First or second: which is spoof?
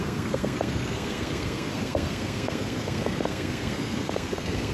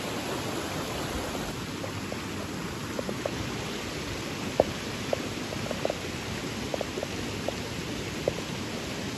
first